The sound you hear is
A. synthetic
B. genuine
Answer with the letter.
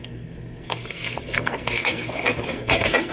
A